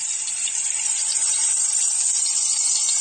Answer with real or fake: fake